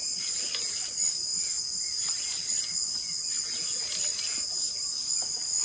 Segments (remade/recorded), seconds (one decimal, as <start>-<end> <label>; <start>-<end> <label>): 0.0-5.6 recorded